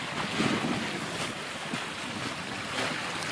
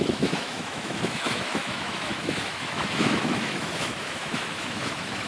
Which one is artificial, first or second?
second